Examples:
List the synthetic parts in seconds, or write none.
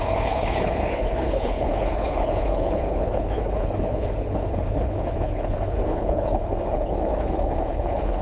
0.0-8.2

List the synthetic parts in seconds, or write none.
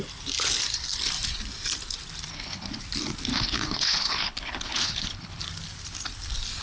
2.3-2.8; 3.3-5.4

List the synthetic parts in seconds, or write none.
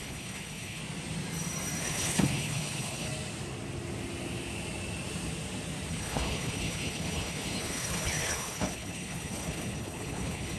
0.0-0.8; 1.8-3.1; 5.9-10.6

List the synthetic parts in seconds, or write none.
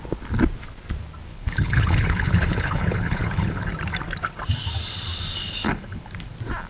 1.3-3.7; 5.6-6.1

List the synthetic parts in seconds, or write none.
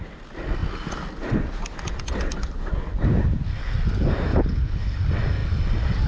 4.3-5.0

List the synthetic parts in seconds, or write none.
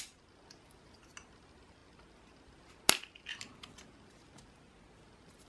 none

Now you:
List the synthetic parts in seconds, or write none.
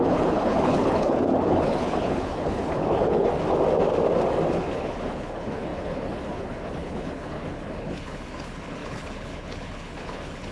0.0-3.3; 4.5-10.5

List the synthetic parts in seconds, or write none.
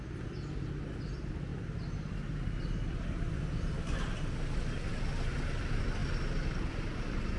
none